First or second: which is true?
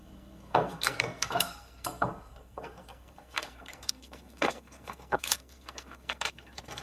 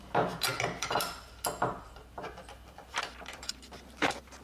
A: second